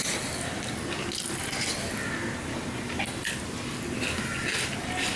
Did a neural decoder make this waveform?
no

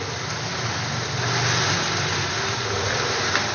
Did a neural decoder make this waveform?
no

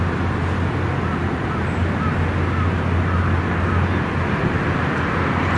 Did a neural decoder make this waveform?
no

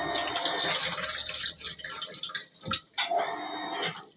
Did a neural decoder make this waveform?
no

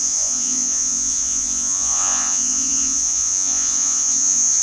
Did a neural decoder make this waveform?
yes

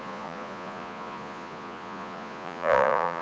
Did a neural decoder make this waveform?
yes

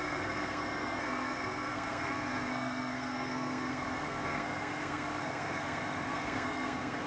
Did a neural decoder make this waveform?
yes